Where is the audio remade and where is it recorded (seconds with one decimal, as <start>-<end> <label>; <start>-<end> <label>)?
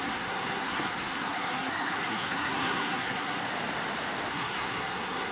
0.0-3.4 remade; 3.4-4.3 recorded; 4.3-5.3 remade